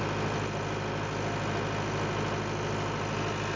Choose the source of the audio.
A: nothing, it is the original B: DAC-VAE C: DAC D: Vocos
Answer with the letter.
A